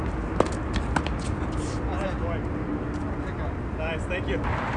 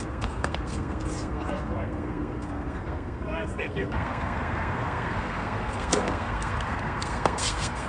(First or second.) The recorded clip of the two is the first